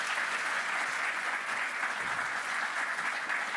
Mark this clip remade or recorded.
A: remade